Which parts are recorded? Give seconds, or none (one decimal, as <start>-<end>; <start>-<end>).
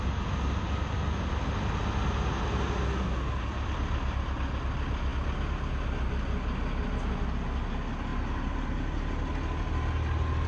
0.0-10.5